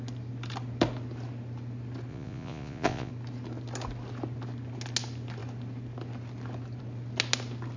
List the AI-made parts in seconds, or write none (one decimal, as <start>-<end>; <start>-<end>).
2.1-3.1

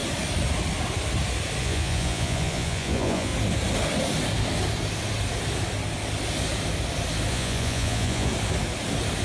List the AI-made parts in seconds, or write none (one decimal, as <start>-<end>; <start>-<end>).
1.6-3.3; 7.3-8.3

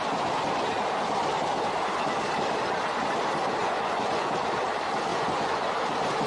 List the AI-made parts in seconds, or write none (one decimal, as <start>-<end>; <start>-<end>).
3.6-4.3; 5.1-5.7